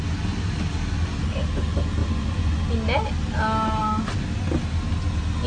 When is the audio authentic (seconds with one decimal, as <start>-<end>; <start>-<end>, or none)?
0.0-2.0; 2.6-5.5